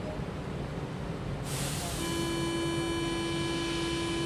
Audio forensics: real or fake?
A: real